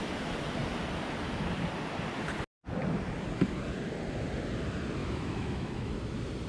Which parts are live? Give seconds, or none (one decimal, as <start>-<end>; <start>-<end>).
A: 0.0-5.0; 5.9-6.5